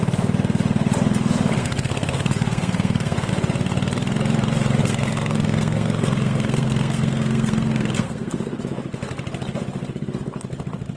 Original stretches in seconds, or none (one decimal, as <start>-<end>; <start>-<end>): 0.0-1.6; 3.3-4.8; 8.6-11.0